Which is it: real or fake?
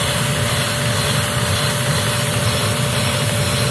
real